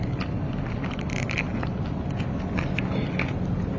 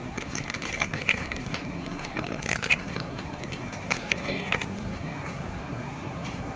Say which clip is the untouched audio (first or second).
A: first